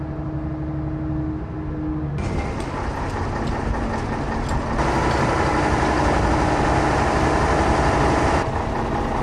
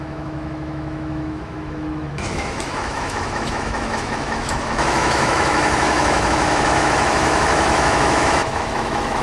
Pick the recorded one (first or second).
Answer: first